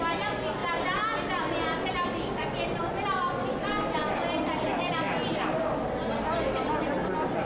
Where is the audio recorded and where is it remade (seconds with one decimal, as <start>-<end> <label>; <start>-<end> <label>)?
0.0-7.5 recorded